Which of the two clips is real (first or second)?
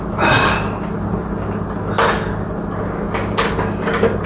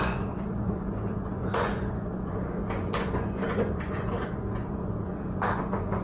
first